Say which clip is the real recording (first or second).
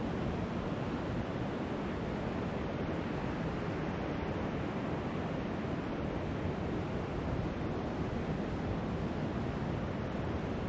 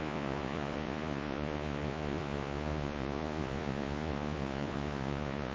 first